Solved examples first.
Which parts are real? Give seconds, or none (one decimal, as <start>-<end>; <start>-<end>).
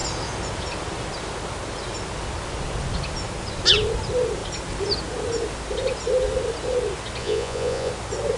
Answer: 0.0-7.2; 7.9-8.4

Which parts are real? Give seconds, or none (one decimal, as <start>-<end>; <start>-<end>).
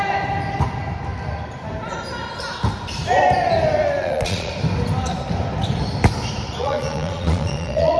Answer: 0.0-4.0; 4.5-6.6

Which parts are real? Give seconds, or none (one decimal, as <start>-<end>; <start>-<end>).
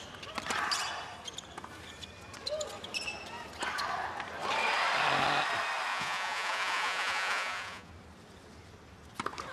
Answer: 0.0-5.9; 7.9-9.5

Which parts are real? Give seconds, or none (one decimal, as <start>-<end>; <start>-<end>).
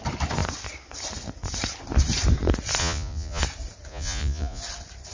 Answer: 0.0-2.8; 3.4-3.9; 4.6-5.1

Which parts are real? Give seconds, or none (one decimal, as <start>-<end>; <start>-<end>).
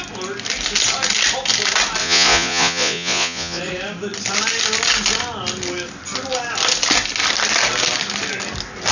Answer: 0.0-2.0; 3.6-8.9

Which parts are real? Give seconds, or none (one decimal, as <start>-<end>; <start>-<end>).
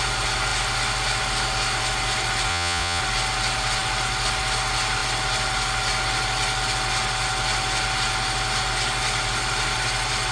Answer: 0.0-2.5; 3.0-10.3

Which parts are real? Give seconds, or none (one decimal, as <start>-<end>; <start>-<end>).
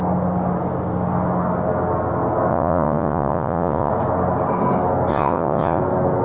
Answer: 0.0-2.5; 3.9-5.1; 5.8-6.2